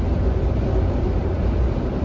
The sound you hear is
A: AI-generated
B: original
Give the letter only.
B